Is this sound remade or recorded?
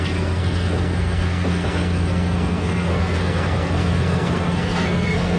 remade